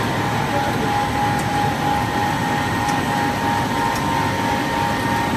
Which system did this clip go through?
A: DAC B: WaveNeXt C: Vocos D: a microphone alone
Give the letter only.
D